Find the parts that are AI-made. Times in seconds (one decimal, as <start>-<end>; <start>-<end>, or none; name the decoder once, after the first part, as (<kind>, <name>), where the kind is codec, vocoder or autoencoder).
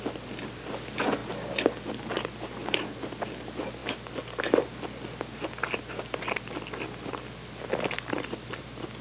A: none